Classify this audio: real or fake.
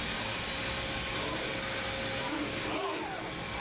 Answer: real